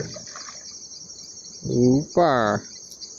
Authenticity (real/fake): real